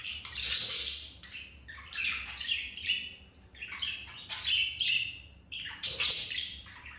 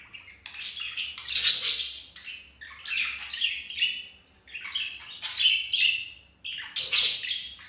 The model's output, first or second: first